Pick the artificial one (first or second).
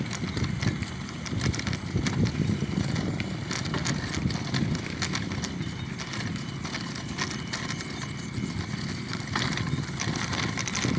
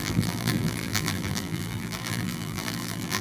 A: second